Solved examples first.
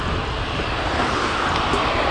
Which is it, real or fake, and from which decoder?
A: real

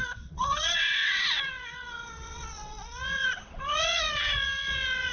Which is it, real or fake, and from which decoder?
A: fake, vocoder, WaveNeXt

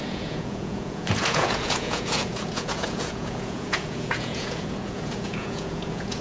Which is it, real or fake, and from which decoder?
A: fake, vocoder, Vocos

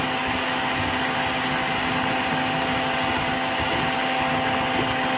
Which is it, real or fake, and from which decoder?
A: real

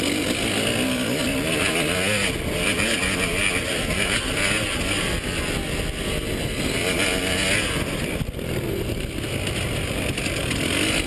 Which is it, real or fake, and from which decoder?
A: real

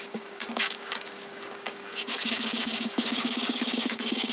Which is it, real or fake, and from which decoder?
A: fake, codec, DAC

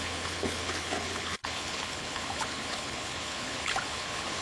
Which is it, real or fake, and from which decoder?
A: fake, codec, HILCodec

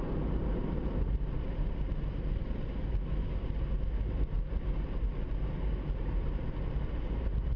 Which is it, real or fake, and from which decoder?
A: real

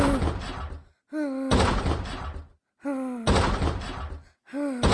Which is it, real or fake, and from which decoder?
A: real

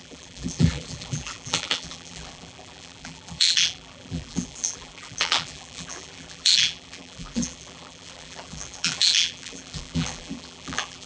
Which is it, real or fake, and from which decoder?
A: fake, vocoder, BigVGAN v2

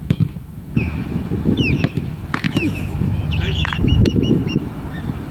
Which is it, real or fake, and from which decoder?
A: fake, autoencoder, DAC-VAE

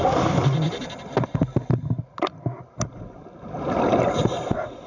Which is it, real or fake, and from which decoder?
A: real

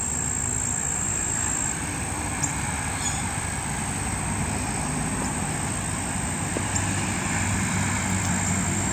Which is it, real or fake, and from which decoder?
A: real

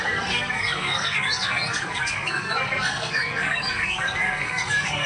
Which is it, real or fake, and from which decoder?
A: fake, codec, SNAC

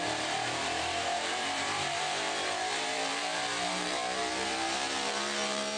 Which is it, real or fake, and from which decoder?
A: fake, vocoder, BigVGAN v2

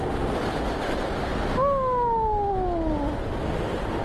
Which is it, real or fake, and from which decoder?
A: real